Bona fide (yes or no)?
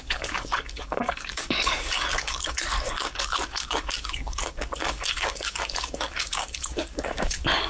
no